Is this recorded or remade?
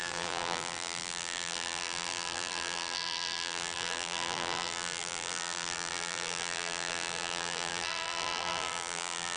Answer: remade